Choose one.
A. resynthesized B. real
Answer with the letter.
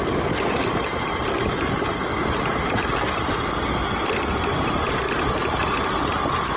B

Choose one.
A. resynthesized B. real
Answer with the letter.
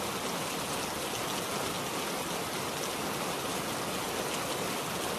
B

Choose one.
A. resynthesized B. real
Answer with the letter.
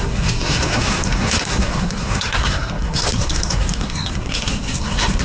A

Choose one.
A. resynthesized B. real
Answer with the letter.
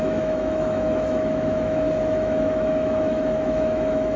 A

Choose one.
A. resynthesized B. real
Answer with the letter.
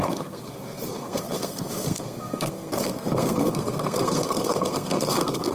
A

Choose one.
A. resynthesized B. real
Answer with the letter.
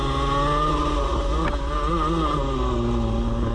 B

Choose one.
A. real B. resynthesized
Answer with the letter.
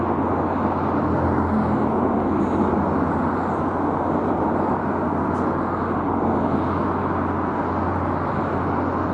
A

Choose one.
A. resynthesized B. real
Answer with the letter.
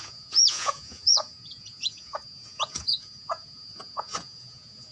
A